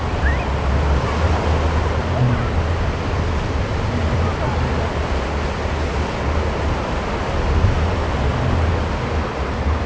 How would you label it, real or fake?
real